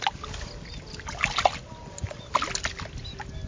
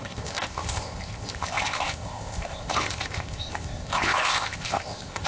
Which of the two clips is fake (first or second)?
second